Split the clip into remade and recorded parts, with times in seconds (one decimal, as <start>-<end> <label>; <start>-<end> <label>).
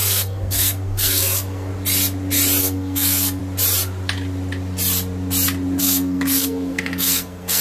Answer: 0.0-1.7 remade; 1.7-2.6 recorded; 2.6-3.4 remade; 3.4-5.8 recorded; 5.8-7.6 remade